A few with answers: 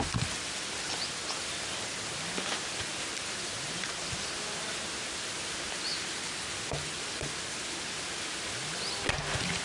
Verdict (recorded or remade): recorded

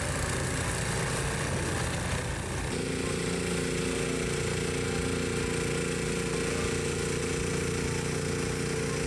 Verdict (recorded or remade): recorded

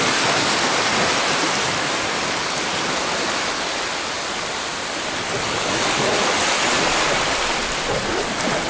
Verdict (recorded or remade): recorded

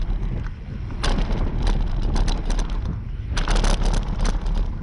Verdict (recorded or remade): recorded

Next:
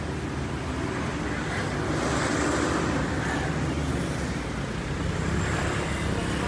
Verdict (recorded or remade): recorded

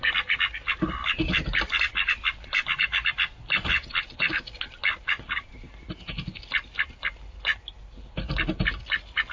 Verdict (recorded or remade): recorded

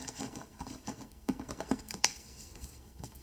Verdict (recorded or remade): remade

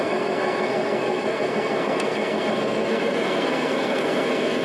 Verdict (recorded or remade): remade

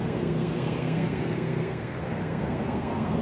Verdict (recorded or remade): remade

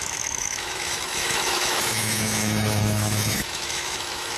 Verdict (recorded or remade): remade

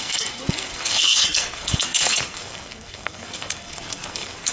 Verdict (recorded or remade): remade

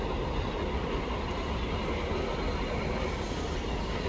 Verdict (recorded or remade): recorded